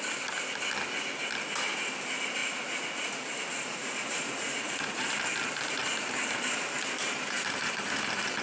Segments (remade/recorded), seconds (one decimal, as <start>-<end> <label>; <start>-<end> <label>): 0.0-2.4 recorded; 2.4-3.3 remade; 3.3-3.7 recorded; 3.7-5.1 remade; 5.1-8.4 recorded